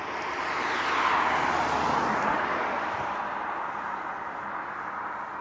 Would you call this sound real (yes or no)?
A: yes